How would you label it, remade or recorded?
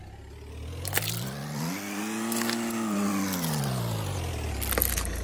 recorded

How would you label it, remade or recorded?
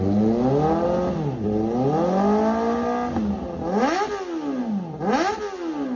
recorded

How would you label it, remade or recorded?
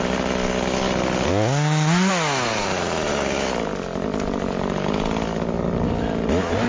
recorded